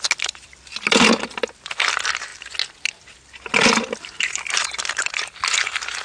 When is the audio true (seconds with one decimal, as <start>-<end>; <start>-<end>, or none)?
0.0-6.0